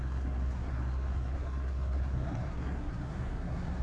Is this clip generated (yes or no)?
yes